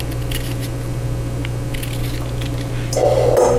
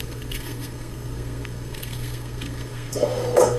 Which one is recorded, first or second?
first